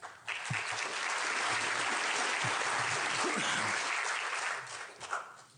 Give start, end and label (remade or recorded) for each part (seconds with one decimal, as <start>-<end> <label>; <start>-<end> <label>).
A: 0.0-5.6 recorded